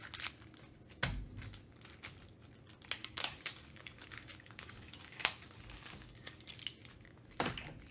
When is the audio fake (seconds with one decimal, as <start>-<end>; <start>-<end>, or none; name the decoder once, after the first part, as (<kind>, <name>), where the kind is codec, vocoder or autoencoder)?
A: 3.0-6.4 (codec, DAC)